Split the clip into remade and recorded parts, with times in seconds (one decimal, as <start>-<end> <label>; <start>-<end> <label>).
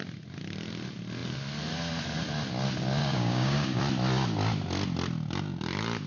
0.0-3.0 recorded; 3.0-3.8 remade; 3.8-6.1 recorded